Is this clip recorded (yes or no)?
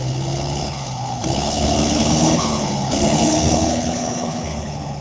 no